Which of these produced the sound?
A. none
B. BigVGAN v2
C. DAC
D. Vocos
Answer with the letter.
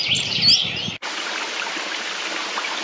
A